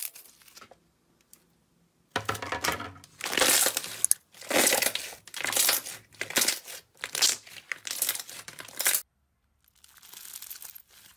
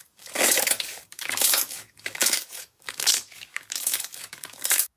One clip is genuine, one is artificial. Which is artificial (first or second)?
second